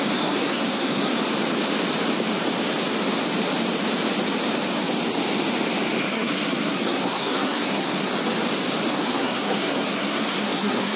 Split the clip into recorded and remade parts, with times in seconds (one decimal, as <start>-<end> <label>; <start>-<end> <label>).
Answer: 0.0-1.2 remade; 1.2-6.0 recorded; 6.0-8.1 remade; 8.1-8.9 recorded; 8.9-11.0 remade